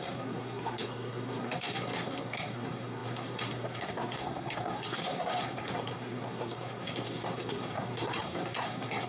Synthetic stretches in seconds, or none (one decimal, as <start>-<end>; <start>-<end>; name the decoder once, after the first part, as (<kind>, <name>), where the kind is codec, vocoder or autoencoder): 0.0-9.1 (codec, SNAC)